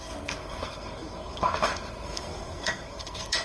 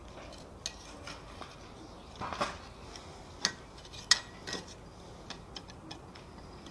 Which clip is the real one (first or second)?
second